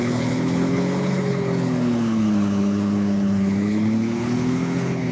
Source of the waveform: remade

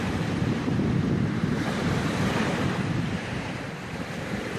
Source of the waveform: remade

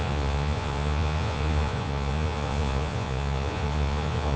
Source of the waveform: remade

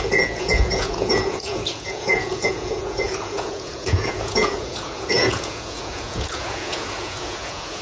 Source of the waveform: remade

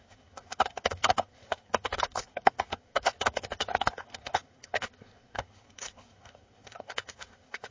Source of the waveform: remade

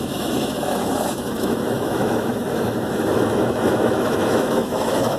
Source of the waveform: remade